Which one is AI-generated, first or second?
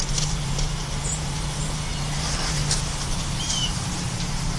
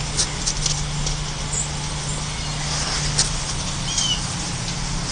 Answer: first